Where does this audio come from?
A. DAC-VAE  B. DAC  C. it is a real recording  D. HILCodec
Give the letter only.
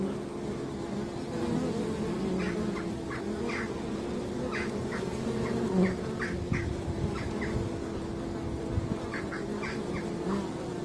C